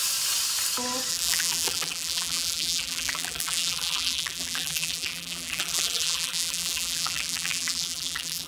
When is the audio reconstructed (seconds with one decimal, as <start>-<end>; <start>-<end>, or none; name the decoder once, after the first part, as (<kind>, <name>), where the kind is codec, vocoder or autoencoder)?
1.1-8.5 (vocoder, BigVGAN v2)